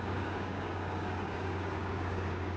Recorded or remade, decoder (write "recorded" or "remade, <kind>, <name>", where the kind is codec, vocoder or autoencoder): remade, codec, DAC